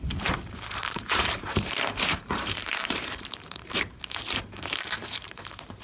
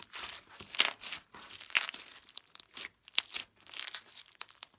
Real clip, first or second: second